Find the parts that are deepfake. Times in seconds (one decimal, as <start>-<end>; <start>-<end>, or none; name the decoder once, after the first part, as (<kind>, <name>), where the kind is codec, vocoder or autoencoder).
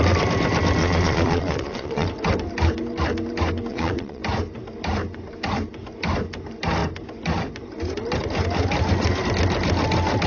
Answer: 0.8-2.1 (vocoder, Vocos); 3.7-4.2